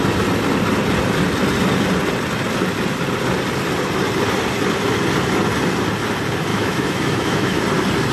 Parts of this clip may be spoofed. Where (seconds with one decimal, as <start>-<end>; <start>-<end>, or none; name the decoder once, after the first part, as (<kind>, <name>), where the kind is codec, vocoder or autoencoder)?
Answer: 6.5-7.6 (autoencoder, DAC-VAE)